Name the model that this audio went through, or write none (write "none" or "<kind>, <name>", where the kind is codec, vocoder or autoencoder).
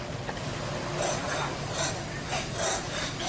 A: none